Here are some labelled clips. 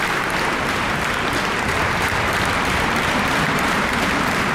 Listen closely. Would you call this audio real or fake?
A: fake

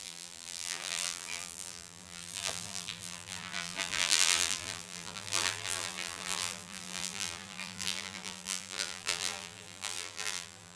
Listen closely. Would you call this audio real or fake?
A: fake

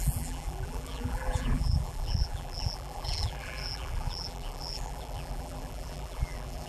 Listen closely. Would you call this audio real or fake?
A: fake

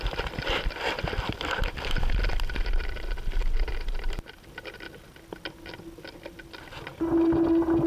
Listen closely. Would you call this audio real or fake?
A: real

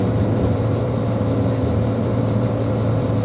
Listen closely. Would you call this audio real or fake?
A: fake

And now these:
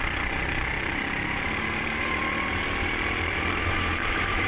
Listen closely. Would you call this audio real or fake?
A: fake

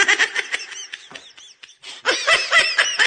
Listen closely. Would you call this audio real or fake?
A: real